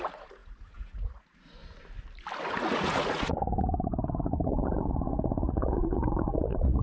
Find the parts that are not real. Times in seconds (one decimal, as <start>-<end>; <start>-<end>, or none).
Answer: 0.0-1.6; 2.4-6.8